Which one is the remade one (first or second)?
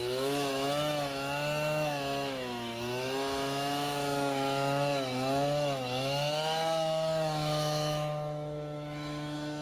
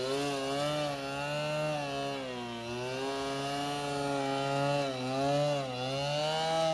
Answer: first